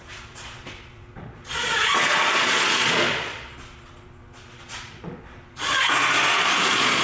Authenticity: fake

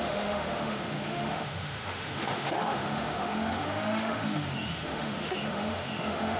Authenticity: fake